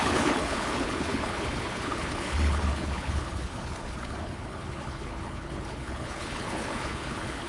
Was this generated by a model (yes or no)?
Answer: yes